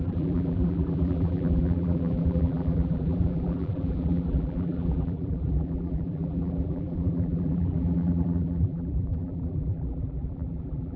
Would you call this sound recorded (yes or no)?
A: no